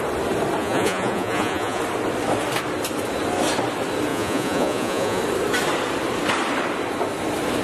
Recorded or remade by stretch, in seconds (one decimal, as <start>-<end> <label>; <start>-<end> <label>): 0.0-0.6 recorded; 0.6-1.8 remade; 1.8-4.1 recorded; 4.1-5.2 remade; 5.2-7.6 recorded

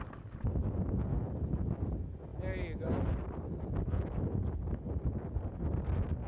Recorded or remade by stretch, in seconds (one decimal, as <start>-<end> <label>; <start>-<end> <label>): 0.0-6.3 recorded

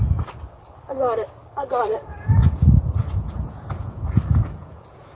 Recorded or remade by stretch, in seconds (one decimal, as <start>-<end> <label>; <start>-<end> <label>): 0.0-1.9 recorded; 1.9-5.2 remade

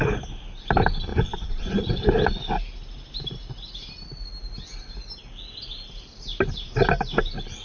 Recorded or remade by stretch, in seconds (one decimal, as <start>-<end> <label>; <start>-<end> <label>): 0.0-1.1 recorded; 1.1-1.8 remade; 1.8-7.6 recorded

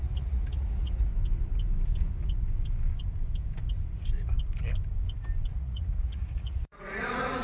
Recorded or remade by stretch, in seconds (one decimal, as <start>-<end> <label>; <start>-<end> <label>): 0.0-1.1 remade; 1.1-5.5 recorded; 5.5-7.4 remade